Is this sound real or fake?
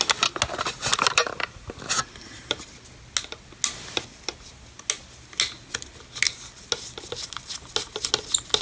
real